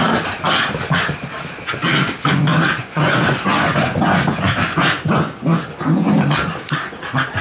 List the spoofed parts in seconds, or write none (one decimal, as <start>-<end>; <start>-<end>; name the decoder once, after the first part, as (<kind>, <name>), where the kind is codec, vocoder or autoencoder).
2.5-6.1 (vocoder, Vocos)